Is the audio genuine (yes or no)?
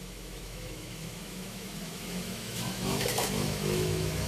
no